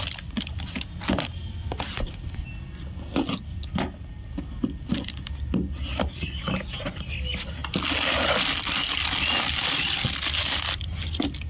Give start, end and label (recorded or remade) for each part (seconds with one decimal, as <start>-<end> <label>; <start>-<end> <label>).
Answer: 0.0-11.5 recorded

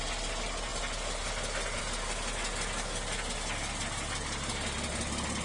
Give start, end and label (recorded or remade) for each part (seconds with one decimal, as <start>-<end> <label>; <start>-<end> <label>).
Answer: 0.0-5.4 recorded

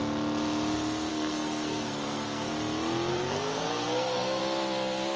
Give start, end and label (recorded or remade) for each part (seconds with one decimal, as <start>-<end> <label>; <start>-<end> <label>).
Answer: 0.0-1.1 recorded; 1.1-2.5 remade; 2.5-3.1 recorded; 3.1-4.4 remade; 4.4-5.2 recorded

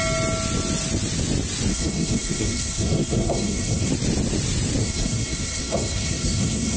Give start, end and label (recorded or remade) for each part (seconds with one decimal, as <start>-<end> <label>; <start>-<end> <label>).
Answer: 0.0-1.7 recorded; 1.7-3.9 remade; 3.9-4.8 recorded; 4.8-6.8 remade

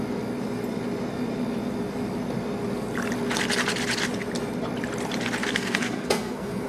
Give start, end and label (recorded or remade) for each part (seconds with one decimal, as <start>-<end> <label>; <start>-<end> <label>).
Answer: 0.0-5.4 recorded; 5.4-6.7 remade

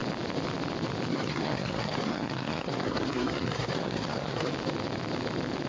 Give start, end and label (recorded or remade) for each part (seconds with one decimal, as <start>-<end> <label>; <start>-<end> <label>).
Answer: 0.0-1.1 recorded; 1.1-4.5 remade; 4.5-5.7 recorded

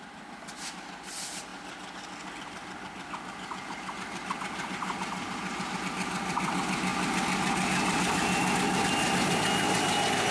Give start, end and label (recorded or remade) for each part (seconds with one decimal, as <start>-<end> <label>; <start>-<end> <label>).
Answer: 0.0-10.3 recorded